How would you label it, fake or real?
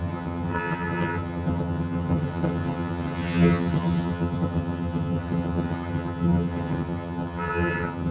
fake